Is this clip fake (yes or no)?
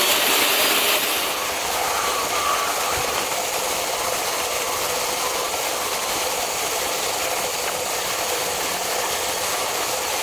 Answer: no